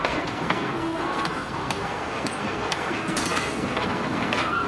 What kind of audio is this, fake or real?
fake